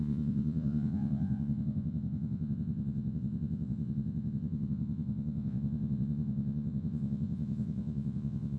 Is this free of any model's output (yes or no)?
no